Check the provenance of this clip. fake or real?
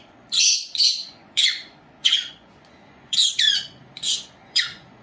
fake